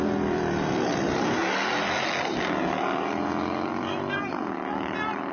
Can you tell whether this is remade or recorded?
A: remade